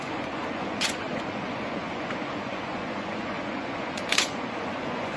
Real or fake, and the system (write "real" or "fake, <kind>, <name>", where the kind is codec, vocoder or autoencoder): fake, vocoder, Vocos